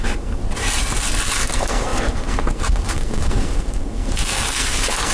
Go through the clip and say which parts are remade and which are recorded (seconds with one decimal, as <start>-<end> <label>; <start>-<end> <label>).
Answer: 0.0-0.4 remade; 0.4-1.4 recorded; 1.4-5.1 remade